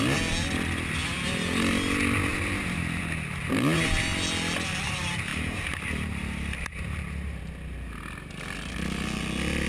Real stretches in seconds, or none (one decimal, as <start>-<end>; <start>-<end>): 0.0-2.3; 3.0-5.3; 7.4-9.7